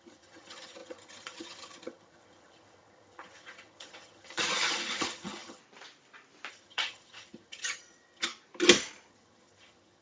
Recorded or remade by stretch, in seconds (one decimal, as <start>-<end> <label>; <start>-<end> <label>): 0.0-5.6 remade; 5.6-6.5 recorded; 6.5-8.3 remade; 8.3-9.1 recorded; 9.1-10.0 remade